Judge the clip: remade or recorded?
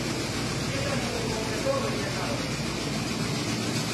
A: recorded